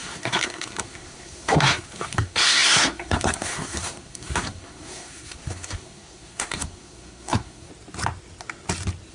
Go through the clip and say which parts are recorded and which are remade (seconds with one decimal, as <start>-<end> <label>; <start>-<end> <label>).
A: 0.0-7.7 remade; 7.7-9.1 recorded